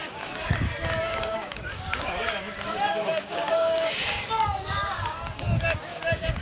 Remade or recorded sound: remade